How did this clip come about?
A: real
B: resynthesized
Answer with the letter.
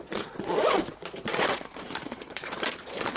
B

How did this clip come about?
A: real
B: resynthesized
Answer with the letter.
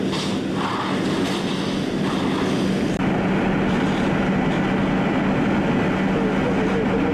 A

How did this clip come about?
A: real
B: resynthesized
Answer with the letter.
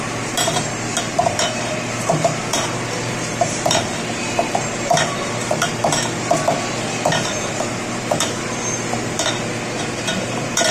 B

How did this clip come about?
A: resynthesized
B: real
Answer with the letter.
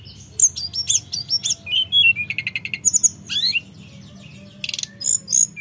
B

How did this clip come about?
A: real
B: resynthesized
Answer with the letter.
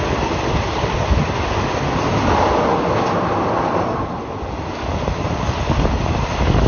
A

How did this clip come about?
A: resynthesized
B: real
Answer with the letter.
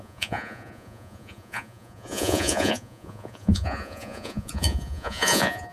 A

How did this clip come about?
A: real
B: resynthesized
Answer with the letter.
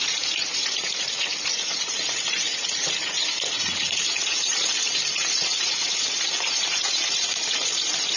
B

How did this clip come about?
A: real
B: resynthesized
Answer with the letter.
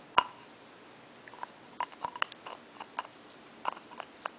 A